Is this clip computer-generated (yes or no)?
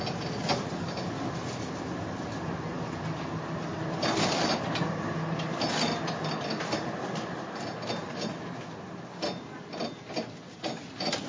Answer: no